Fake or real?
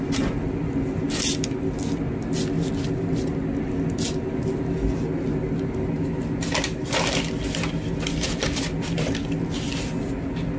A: real